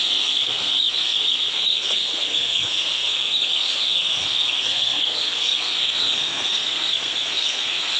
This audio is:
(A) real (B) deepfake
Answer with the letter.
B